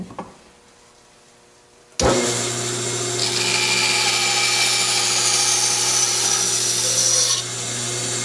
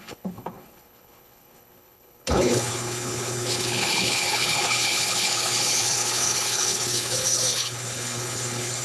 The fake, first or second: second